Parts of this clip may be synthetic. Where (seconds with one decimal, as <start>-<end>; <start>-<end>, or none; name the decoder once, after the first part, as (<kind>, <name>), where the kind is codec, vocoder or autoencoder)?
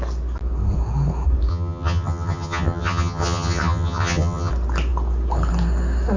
1.5-4.5 (vocoder, HiFi-GAN)